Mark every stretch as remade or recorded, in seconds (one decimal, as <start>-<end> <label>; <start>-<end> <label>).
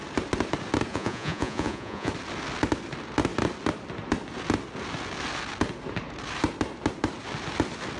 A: 0.0-0.9 recorded; 0.9-2.1 remade; 2.1-8.0 recorded